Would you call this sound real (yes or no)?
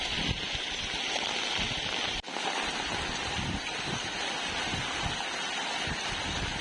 yes